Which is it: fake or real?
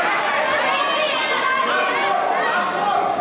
real